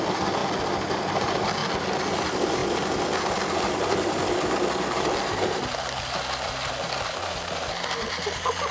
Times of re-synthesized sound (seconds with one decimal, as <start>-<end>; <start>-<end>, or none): 0.0-0.4; 1.0-1.6; 2.2-2.6; 3.8-8.7